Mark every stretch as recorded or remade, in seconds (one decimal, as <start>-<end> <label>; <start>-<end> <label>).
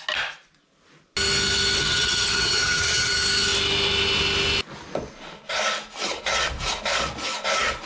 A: 0.0-1.8 recorded; 1.8-3.1 remade; 3.1-7.9 recorded